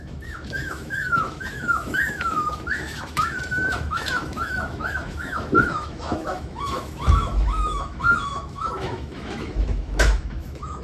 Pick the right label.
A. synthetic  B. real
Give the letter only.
A